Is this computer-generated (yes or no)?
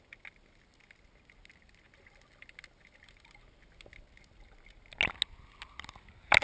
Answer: no